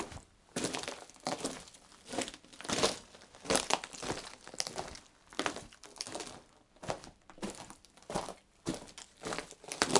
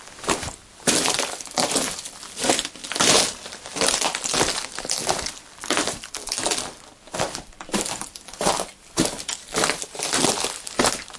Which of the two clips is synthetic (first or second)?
second